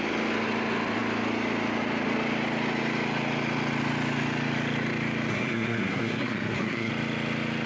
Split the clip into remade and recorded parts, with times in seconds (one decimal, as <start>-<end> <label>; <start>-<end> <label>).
0.0-5.3 recorded; 5.3-6.9 remade; 6.9-7.7 recorded